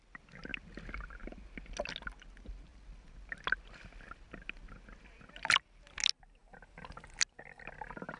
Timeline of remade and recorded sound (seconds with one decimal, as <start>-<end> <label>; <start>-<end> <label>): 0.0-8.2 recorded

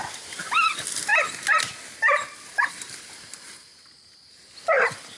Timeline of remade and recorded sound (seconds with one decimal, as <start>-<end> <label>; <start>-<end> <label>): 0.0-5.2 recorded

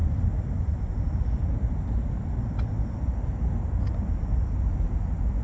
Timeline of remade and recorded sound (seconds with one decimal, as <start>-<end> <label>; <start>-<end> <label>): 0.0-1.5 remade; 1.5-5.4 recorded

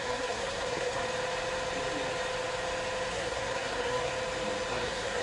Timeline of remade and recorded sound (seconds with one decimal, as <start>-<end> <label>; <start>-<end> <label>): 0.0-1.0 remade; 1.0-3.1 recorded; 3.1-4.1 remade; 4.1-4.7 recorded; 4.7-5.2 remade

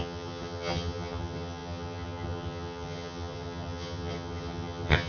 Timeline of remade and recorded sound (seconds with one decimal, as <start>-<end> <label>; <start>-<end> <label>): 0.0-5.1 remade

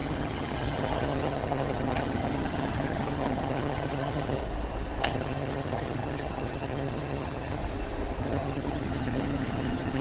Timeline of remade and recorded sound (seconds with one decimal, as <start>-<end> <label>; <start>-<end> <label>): 0.0-4.4 remade; 4.4-5.0 recorded; 5.0-7.6 remade; 7.6-8.2 recorded; 8.2-10.0 remade